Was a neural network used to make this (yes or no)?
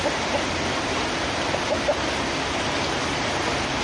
no